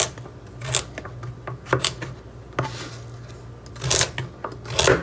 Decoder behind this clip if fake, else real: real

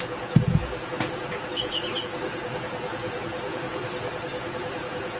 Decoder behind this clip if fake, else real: fake, vocoder, Vocos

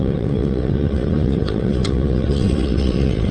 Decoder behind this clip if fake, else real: fake, vocoder, WaveNeXt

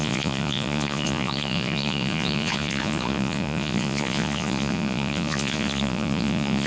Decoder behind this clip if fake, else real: fake, vocoder, Vocos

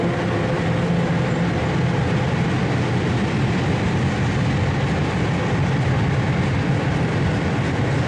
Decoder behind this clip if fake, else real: real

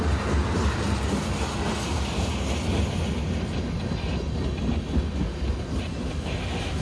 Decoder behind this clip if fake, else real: real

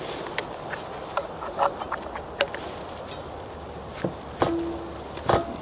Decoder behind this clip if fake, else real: real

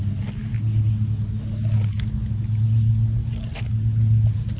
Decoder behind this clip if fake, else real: real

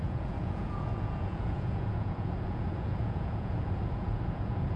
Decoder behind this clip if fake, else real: fake, vocoder, Vocos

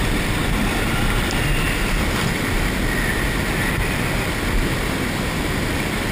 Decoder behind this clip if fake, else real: real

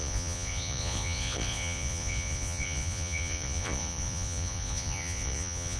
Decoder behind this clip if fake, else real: fake, vocoder, Vocos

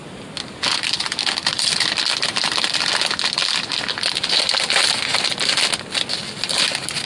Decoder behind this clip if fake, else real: real